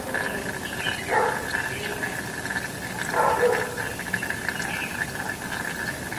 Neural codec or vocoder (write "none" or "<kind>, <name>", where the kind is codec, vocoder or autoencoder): none